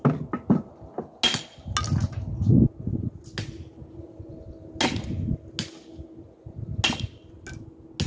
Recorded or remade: recorded